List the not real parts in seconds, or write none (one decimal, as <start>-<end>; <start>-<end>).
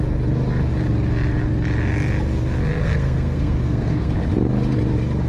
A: 2.8-4.1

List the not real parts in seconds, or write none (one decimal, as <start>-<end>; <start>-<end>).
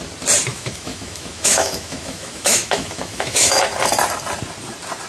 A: 0.5-3.6